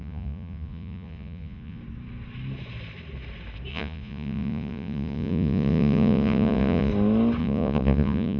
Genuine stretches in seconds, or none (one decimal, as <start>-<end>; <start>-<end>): 1.8-3.7; 6.9-7.4